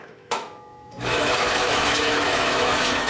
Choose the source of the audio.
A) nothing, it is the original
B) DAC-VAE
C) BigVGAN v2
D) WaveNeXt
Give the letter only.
B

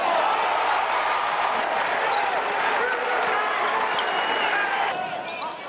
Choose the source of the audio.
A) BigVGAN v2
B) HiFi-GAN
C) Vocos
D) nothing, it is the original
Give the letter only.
D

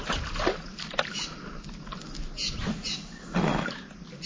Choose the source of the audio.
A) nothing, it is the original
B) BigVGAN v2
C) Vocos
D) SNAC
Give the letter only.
A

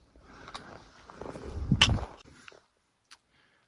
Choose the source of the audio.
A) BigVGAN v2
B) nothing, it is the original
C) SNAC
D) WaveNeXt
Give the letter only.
B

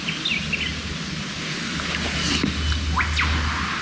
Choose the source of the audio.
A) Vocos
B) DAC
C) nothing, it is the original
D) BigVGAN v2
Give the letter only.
C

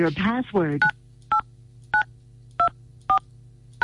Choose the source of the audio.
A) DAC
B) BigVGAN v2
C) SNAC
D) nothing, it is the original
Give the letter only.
D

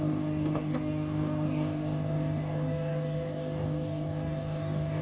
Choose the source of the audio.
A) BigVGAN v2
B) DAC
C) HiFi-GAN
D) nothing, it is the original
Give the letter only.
B